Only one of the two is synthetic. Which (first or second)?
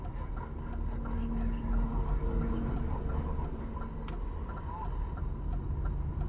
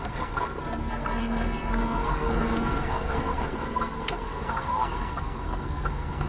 second